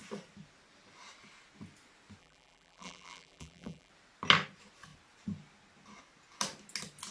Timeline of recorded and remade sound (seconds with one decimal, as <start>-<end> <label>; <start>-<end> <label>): 0.0-2.2 recorded; 2.2-3.9 remade; 3.9-7.1 recorded